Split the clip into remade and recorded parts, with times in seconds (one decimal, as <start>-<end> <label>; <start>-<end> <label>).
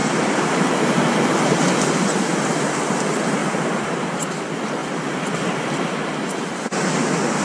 0.0-0.7 remade; 0.7-3.4 recorded; 3.4-4.2 remade; 4.2-7.4 recorded